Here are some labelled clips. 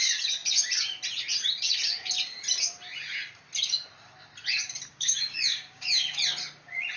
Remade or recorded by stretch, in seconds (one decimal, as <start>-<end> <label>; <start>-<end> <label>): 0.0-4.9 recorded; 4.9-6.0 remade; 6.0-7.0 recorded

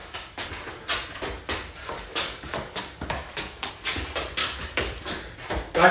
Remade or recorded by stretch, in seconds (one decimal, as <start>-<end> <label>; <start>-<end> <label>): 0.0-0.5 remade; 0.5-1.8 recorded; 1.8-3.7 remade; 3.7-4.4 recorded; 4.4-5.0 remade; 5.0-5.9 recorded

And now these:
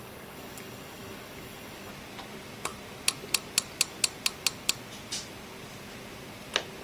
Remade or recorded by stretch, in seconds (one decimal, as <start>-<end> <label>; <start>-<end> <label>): 0.0-1.9 remade; 1.9-6.8 recorded